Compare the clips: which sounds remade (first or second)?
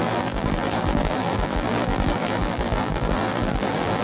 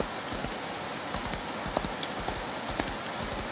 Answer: first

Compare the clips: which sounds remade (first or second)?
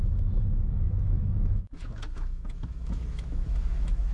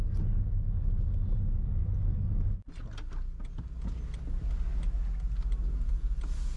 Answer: first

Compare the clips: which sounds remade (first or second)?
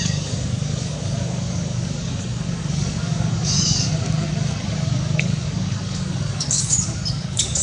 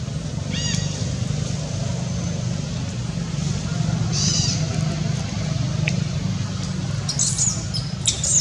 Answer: first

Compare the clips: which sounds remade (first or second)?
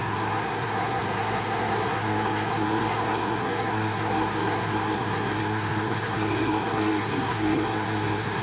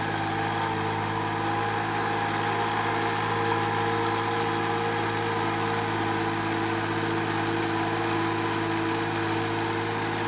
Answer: first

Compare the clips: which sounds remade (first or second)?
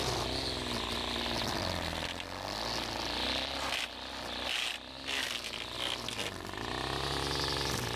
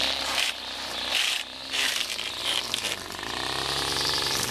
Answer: second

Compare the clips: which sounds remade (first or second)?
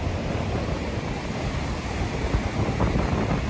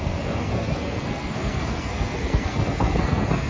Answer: second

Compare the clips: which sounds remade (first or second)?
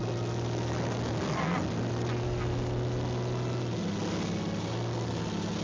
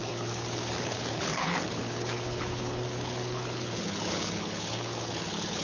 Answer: second